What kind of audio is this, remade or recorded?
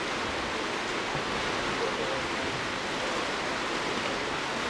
recorded